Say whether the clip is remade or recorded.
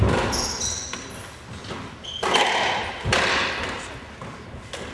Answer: recorded